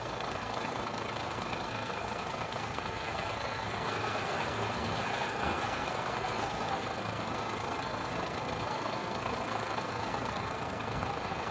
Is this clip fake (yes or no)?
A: yes